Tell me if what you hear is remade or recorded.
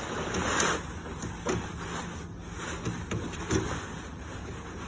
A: recorded